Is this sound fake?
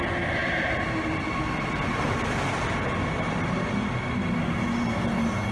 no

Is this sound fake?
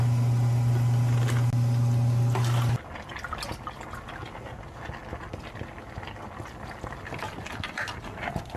no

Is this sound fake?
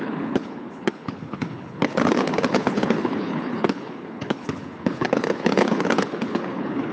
yes